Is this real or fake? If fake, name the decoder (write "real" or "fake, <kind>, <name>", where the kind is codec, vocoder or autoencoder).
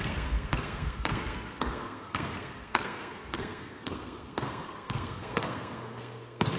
fake, codec, SNAC